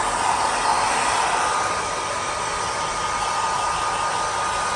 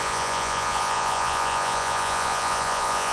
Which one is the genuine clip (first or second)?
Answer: first